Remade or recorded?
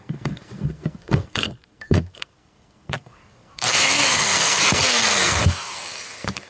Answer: remade